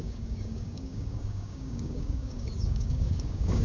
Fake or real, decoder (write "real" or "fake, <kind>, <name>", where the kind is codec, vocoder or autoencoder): fake, codec, DAC